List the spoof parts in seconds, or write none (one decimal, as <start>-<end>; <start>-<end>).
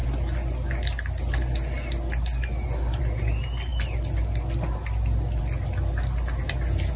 none